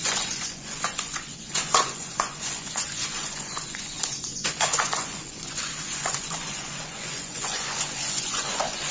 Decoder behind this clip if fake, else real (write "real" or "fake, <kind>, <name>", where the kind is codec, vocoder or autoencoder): fake, vocoder, Vocos